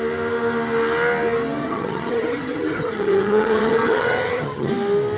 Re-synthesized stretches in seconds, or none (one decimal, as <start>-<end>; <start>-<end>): 1.6-4.7